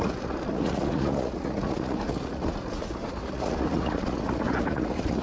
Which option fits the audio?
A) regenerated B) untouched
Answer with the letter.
A